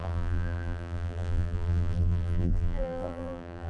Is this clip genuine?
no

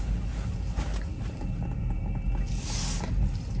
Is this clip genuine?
yes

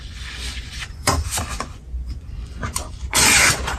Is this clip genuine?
no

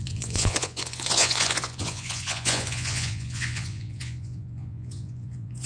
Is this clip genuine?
no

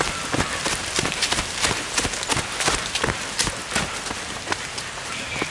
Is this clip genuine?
yes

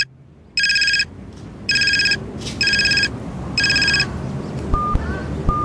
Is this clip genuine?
yes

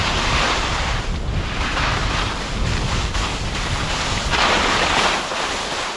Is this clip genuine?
yes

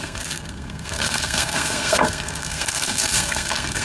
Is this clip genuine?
no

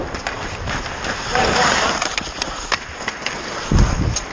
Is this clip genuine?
no